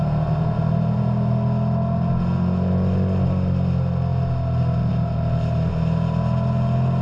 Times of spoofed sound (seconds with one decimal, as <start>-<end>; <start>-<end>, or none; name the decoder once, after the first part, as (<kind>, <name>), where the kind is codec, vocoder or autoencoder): none